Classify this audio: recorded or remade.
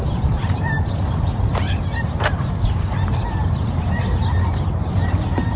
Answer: remade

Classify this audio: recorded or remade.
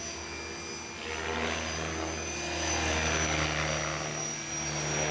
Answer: recorded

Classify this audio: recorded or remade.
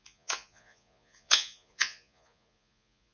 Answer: remade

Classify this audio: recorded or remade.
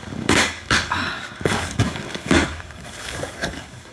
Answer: remade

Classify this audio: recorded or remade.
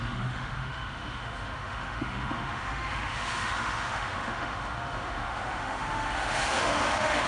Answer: remade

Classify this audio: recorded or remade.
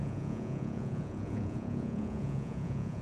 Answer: remade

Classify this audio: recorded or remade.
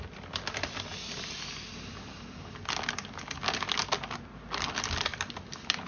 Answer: recorded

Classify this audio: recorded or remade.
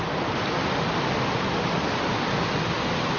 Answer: recorded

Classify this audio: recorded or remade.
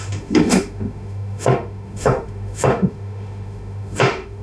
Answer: remade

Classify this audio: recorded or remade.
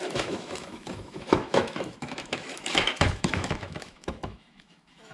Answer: remade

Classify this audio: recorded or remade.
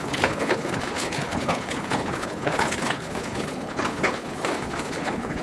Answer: remade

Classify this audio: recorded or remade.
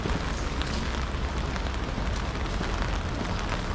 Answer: recorded